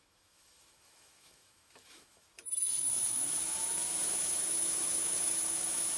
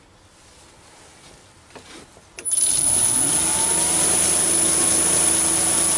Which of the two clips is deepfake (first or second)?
first